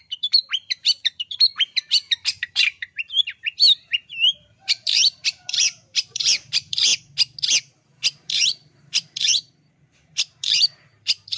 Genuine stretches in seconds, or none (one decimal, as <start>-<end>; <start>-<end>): 6.9-8.0